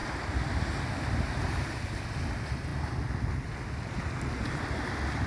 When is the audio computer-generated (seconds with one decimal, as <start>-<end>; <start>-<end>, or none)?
none